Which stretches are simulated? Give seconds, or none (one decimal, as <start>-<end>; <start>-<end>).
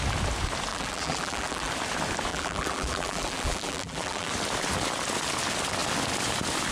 0.7-1.7; 2.3-4.3